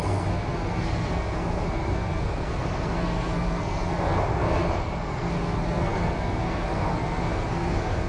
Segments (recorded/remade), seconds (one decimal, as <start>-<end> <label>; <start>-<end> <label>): 0.0-8.1 remade